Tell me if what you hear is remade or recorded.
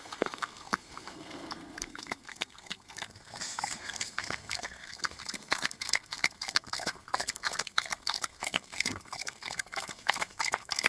remade